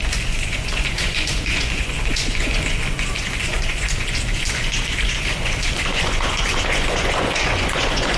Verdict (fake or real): fake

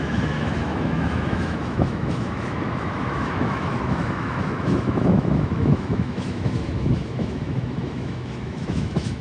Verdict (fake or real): fake